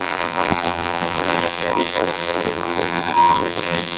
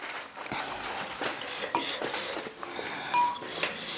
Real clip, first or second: second